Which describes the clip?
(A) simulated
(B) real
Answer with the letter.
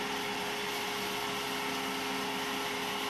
B